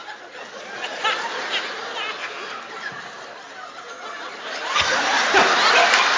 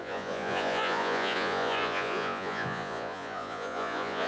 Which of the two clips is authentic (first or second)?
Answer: first